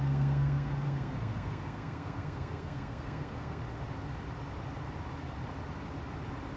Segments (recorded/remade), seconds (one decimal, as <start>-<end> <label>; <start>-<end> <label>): 0.0-3.6 remade; 3.6-6.6 recorded